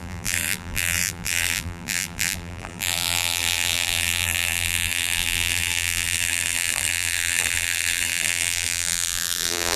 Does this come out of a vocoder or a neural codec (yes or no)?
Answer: yes